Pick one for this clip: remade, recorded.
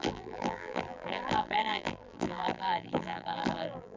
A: remade